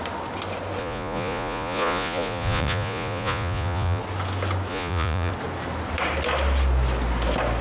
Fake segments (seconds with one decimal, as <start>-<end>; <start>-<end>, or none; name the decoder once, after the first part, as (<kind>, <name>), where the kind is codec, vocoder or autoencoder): 0.8-4.0 (vocoder, Vocos); 4.7-5.3